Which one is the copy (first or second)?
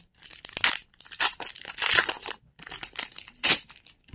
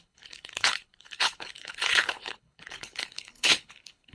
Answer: second